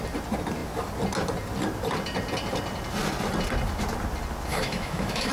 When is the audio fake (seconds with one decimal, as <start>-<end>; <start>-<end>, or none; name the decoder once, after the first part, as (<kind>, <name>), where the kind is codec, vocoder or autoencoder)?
4.5-5.3 (autoencoder, DAC-VAE)

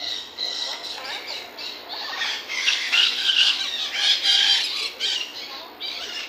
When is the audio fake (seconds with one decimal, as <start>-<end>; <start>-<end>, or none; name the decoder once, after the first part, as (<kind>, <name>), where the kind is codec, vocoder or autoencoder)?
0.0-1.0 (codec, SNAC); 2.6-3.6

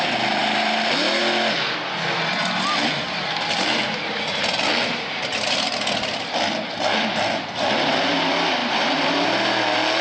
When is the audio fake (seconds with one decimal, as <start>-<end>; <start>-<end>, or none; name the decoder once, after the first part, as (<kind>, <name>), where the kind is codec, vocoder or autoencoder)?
none

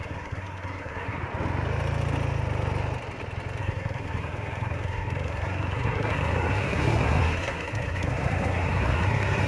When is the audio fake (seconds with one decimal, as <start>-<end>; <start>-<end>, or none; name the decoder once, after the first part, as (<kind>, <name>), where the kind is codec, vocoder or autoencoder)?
0.0-1.2 (codec, SNAC); 3.6-9.5

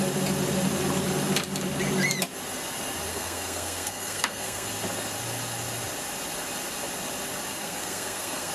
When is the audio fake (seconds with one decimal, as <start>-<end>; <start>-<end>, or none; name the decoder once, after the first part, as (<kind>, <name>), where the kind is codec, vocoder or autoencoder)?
3.1-4.7 (codec, SNAC); 7.6-8.5

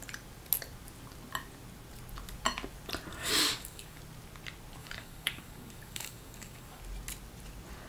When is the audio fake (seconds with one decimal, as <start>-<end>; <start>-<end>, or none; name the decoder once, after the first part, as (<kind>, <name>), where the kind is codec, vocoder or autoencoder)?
3.1-4.0 (codec, DAC); 4.8-6.8

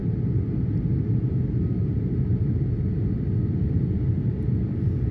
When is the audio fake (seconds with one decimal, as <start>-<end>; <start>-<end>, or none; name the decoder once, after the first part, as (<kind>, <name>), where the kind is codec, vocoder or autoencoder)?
0.0-2.7 (vocoder, BigVGAN v2)